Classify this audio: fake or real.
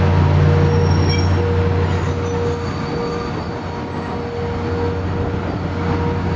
real